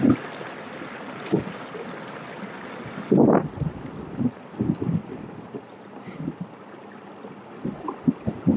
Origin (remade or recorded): recorded